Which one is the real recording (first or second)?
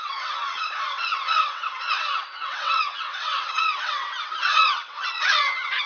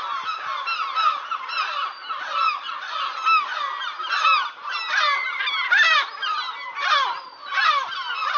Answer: second